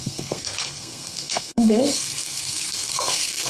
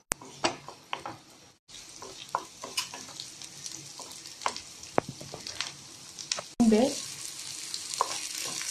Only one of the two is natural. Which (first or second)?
second